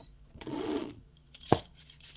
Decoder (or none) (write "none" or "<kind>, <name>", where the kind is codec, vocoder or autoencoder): vocoder, Vocos